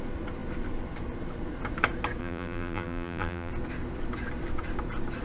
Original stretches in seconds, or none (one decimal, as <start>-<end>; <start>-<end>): 0.0-2.2; 3.5-5.2